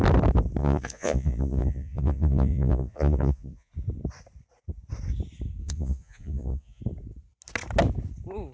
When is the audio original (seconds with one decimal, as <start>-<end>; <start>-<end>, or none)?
0.0-0.6; 3.7-5.6; 6.8-8.5